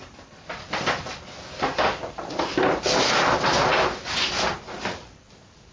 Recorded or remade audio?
recorded